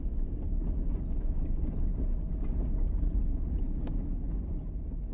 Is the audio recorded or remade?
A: recorded